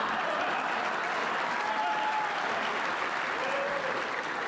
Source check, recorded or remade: recorded